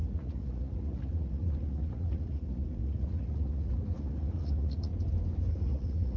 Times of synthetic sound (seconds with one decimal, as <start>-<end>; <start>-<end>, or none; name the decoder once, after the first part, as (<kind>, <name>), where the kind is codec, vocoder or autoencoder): 0.0-4.9 (vocoder, Vocos); 5.5-6.2